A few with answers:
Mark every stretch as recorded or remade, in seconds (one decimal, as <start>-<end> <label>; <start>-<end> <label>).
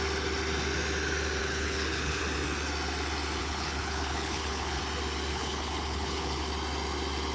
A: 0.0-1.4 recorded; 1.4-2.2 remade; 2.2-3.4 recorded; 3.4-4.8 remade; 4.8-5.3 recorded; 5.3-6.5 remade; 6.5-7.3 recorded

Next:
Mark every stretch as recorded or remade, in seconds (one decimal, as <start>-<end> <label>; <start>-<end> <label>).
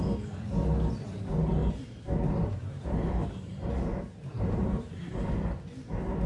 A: 0.0-1.6 recorded; 1.6-5.0 remade; 5.0-6.3 recorded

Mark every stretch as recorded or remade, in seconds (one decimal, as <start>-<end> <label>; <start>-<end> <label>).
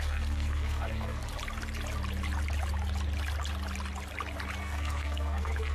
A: 0.0-1.2 remade; 1.2-4.6 recorded; 4.6-5.7 remade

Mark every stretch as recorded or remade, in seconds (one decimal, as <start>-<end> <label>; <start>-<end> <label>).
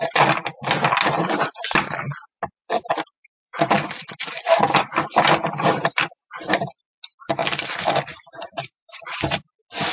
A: 0.0-3.2 recorded; 3.2-6.8 remade; 6.8-7.4 recorded; 7.4-9.3 remade; 9.3-9.9 recorded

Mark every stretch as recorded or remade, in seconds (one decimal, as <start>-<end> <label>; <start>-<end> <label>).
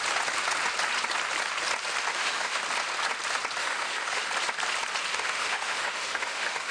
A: 0.0-2.1 recorded; 2.1-2.6 remade; 2.6-3.6 recorded; 3.6-4.2 remade; 4.2-5.1 recorded; 5.1-6.7 remade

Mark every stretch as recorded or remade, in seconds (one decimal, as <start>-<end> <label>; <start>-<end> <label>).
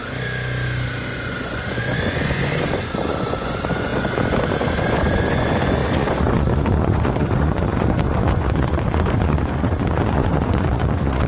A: 0.0-11.3 remade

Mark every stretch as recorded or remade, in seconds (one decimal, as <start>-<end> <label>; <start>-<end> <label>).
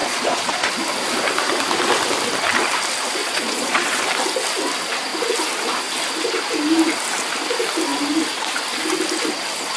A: 0.0-0.7 remade; 0.7-3.2 recorded; 3.2-4.0 remade; 4.0-9.8 recorded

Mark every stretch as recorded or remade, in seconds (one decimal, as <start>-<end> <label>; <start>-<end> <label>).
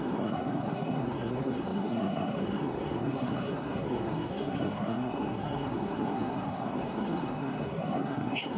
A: 0.0-8.6 remade